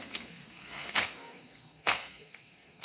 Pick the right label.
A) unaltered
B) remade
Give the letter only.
B